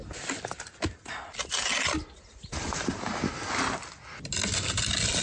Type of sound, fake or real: real